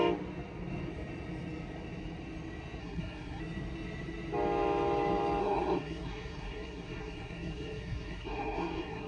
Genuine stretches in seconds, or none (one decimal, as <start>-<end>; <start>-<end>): 0.0-2.8; 3.4-5.4